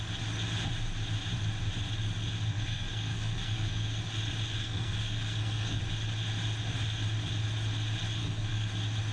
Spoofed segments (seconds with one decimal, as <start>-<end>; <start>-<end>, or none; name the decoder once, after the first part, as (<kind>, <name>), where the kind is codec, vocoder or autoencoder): 2.5-4.0 (codec, SNAC); 4.6-5.8; 8.2-8.7